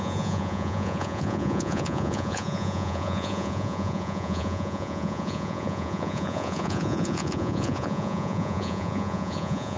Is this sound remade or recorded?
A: remade